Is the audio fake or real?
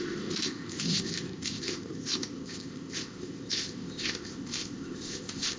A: fake